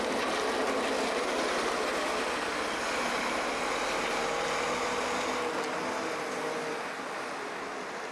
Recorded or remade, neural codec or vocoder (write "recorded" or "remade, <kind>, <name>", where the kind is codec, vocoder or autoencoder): recorded